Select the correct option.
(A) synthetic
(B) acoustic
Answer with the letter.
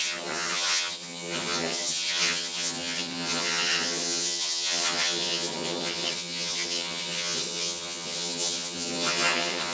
A